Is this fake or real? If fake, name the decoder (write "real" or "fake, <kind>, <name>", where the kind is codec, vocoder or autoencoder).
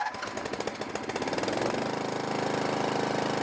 real